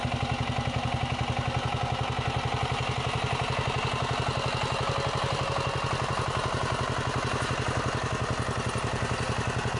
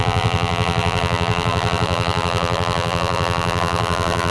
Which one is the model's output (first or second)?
second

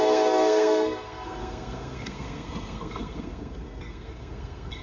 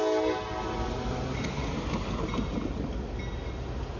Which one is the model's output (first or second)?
first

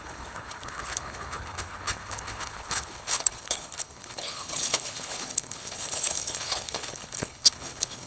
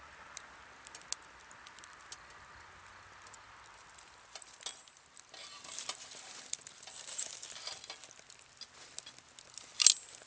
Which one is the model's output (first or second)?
first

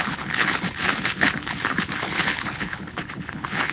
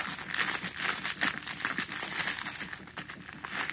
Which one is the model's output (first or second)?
first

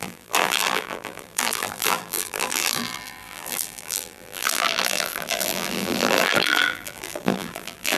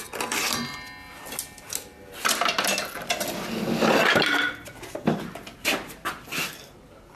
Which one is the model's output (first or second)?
first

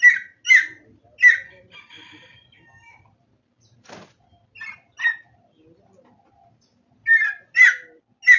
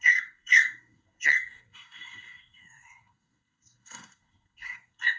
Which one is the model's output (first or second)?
second